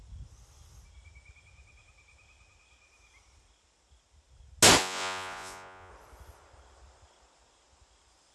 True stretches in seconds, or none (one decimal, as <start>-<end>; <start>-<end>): 0.0-4.8; 5.9-8.3